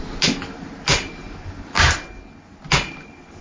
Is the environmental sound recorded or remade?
recorded